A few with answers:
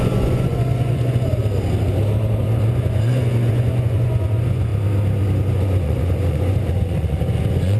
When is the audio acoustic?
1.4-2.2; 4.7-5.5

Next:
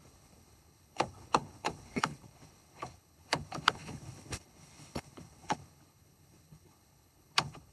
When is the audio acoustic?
none

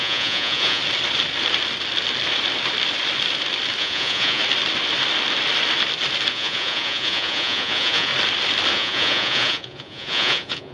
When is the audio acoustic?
0.8-3.8; 4.4-6.3; 8.1-8.7

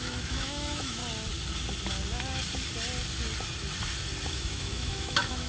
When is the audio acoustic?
1.0-4.3